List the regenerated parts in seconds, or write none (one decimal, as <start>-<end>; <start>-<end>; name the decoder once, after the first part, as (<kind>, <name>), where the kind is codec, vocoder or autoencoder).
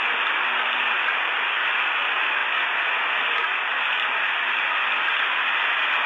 none